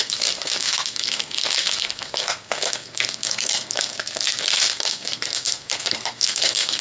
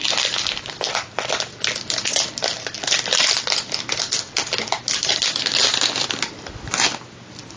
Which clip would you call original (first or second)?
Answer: second